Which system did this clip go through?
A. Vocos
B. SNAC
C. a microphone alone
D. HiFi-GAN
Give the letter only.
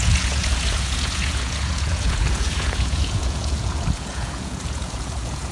A